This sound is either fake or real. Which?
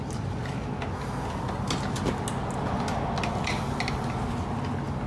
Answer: real